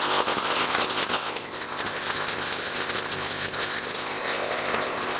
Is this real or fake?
fake